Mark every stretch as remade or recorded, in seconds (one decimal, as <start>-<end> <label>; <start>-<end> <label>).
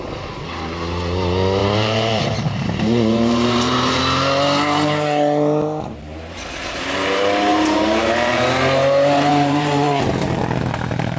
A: 0.0-1.6 recorded; 1.6-4.0 remade; 4.0-7.5 recorded; 7.5-8.3 remade; 8.3-9.3 recorded; 9.3-10.4 remade; 10.4-11.2 recorded